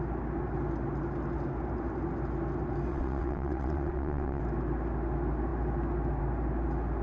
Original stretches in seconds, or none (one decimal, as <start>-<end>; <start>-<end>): 0.0-2.9; 4.4-7.0